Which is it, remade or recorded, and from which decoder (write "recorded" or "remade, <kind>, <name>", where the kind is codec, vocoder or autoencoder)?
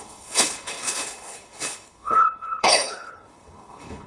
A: remade, codec, HILCodec